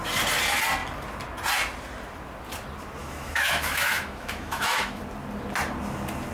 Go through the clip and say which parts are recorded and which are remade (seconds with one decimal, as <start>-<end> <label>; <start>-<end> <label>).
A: 0.0-3.0 recorded; 3.0-5.0 remade; 5.0-6.3 recorded